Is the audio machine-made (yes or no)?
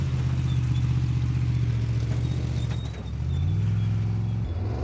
no